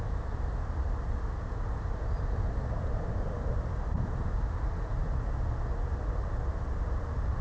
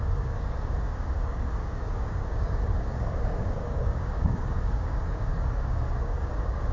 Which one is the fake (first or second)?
second